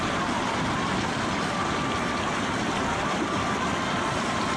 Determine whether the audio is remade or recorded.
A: recorded